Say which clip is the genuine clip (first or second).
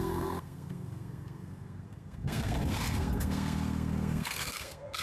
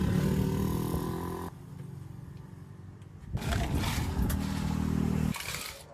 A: second